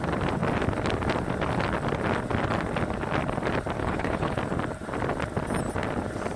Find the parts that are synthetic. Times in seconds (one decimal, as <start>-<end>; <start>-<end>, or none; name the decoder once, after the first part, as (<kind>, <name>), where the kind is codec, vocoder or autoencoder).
3.8-4.4 (codec, HILCodec)